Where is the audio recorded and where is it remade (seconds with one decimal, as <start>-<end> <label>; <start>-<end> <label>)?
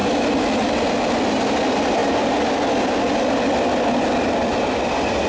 0.0-5.3 recorded